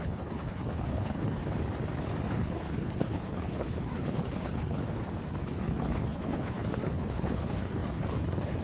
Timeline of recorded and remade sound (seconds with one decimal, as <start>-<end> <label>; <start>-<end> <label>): 0.0-1.4 remade; 1.4-2.3 recorded; 2.3-4.8 remade; 4.8-5.4 recorded; 5.4-8.6 remade